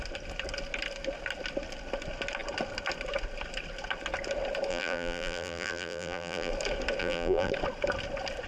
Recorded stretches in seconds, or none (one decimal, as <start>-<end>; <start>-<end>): 0.0-4.7; 6.5-7.0; 7.5-8.5